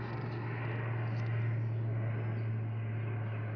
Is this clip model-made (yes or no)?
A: no